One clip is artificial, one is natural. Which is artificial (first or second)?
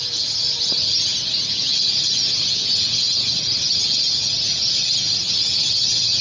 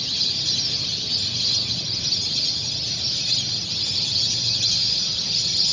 first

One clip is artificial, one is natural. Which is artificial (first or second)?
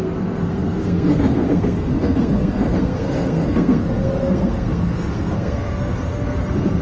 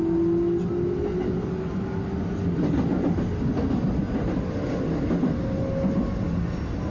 first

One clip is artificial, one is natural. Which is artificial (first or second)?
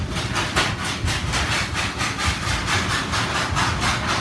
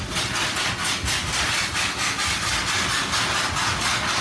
first